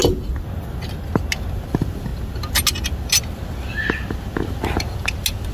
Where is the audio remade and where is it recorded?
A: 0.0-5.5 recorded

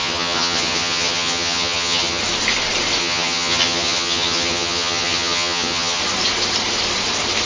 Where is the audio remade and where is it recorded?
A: 0.0-2.2 remade; 2.2-3.0 recorded; 3.0-6.0 remade; 6.0-7.5 recorded

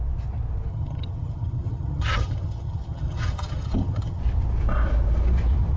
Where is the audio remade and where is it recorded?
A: 0.0-0.7 recorded; 0.7-4.2 remade; 4.2-5.8 recorded

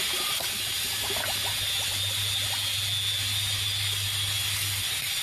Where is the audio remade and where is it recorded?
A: 0.0-5.2 recorded

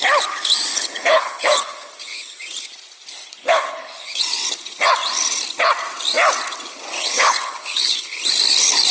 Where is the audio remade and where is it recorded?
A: 0.0-0.7 recorded; 0.7-2.4 remade; 2.4-3.4 recorded; 3.4-4.2 remade; 4.2-7.0 recorded; 7.0-8.2 remade; 8.2-8.9 recorded

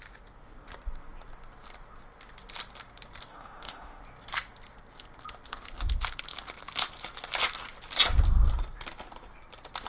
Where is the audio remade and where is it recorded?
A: 0.0-3.3 recorded; 3.3-4.0 remade; 4.0-9.9 recorded

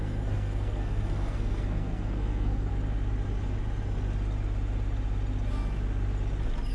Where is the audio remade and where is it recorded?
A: 0.0-2.7 remade; 2.7-6.7 recorded

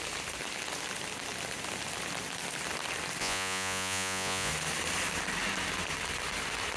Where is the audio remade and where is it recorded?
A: 0.0-3.2 recorded; 3.2-4.5 remade; 4.5-6.8 recorded